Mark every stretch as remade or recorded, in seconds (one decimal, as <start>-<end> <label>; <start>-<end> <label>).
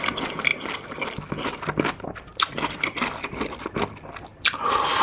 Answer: 0.0-2.3 recorded; 2.3-3.0 remade; 3.0-5.0 recorded